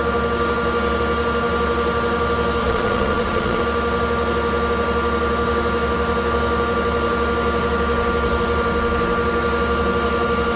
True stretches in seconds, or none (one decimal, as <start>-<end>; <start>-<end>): 0.0-2.6; 3.6-10.6